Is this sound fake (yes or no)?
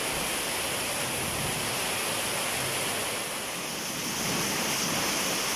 no